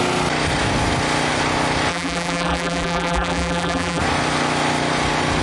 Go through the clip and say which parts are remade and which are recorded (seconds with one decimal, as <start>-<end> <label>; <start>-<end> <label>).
0.0-1.9 recorded; 1.9-4.0 remade; 4.0-5.4 recorded